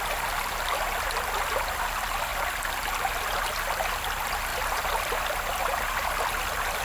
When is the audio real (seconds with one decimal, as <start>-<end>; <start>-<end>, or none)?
0.0-4.5; 5.6-6.8